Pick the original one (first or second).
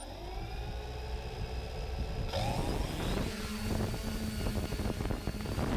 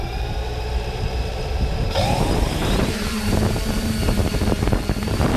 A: first